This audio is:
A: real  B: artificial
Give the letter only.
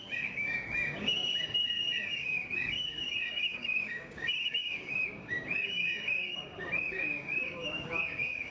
B